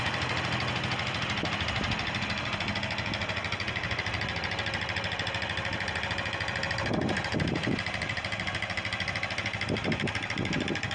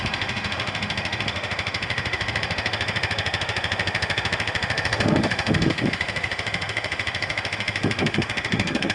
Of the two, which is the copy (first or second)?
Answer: second